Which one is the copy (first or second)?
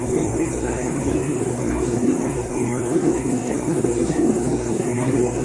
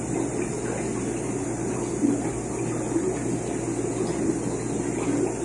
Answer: first